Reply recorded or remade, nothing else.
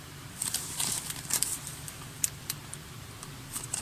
remade